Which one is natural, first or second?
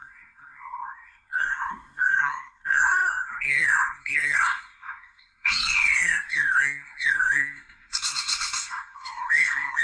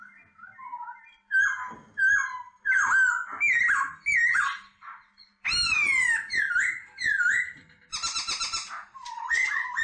second